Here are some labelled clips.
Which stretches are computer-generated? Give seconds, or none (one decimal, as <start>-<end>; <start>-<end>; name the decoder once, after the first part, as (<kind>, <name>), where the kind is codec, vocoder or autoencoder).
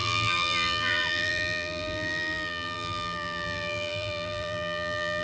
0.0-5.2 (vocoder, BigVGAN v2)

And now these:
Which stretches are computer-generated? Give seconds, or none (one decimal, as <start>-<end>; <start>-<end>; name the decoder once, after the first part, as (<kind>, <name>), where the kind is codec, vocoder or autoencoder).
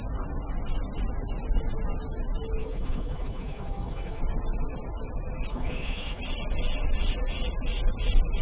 2.6-4.2 (autoencoder, DAC-VAE); 5.5-6.2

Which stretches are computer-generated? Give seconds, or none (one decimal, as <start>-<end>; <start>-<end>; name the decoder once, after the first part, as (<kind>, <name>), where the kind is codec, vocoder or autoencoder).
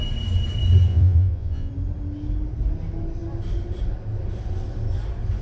0.9-1.7 (vocoder, Vocos)